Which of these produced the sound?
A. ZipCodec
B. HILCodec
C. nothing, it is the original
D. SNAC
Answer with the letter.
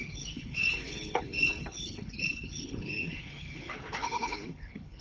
B